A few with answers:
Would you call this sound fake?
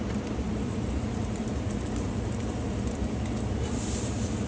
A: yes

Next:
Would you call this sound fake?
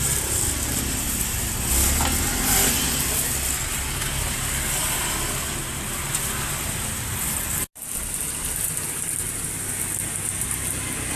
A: no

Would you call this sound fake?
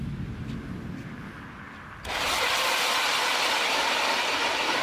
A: no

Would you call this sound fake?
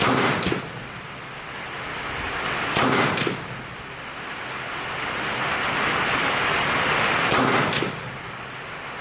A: no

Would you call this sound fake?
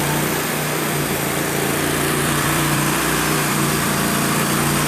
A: yes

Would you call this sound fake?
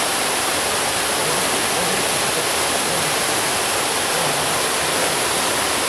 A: no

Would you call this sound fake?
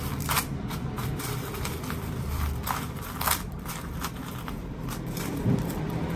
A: yes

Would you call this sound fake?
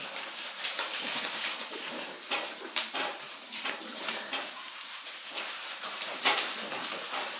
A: yes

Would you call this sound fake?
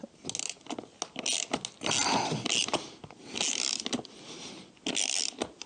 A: no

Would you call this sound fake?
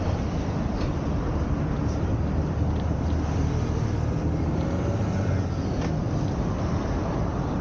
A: yes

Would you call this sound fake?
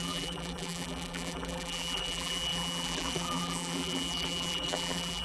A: yes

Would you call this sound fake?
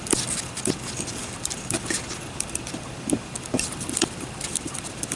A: yes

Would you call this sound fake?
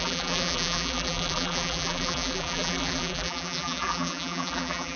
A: yes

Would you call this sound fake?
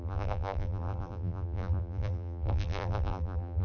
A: yes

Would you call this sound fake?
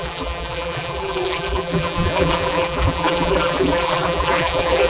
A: yes